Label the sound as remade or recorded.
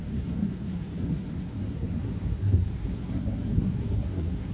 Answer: remade